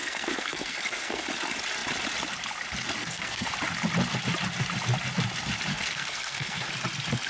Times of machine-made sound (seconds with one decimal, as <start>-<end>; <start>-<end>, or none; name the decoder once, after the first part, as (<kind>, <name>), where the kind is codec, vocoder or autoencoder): 0.0-1.3 (codec, SNAC); 3.0-3.5; 5.7-6.7